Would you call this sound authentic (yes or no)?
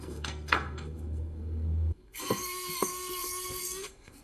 no